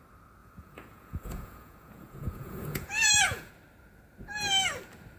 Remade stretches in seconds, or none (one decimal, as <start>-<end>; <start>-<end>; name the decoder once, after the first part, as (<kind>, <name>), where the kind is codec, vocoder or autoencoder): 0.4-3.5 (vocoder, Vocos)